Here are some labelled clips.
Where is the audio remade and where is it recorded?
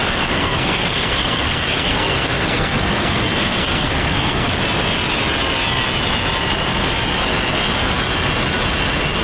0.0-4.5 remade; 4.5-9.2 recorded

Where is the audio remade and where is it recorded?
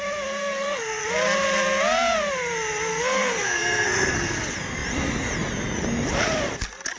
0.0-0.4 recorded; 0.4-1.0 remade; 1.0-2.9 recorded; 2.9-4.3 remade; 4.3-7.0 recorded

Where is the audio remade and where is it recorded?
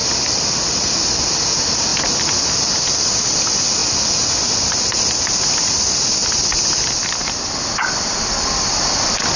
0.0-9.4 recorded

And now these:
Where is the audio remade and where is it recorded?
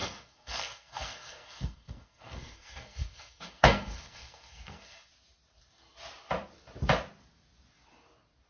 0.0-5.1 remade; 5.1-8.5 recorded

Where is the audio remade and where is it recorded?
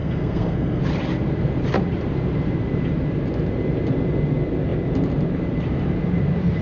0.0-0.8 remade; 0.8-6.6 recorded